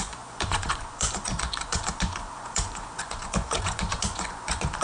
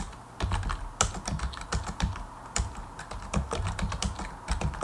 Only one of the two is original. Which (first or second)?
second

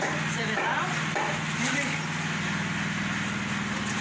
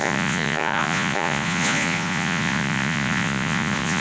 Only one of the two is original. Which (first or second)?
first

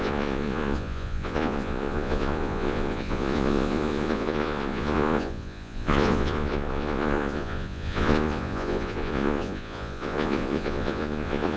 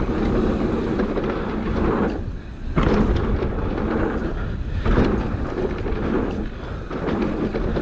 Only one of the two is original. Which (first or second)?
second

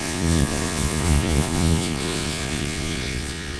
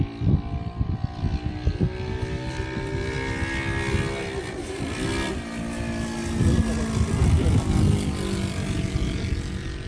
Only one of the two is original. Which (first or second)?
second